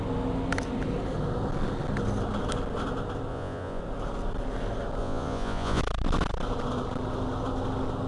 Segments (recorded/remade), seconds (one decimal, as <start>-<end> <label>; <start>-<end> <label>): 0.0-3.3 recorded; 3.3-3.8 remade; 3.8-5.0 recorded; 5.0-5.8 remade; 5.8-8.1 recorded